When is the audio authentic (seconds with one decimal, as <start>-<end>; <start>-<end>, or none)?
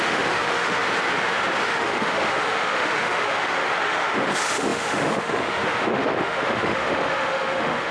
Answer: 0.8-1.6